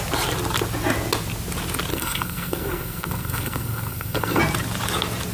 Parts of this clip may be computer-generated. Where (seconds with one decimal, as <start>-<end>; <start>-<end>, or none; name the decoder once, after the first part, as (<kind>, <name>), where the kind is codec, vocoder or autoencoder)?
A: 1.9-4.4 (codec, SNAC)